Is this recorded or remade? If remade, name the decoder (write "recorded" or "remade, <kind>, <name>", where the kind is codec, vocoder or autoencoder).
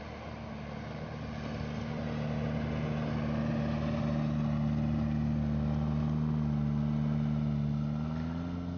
recorded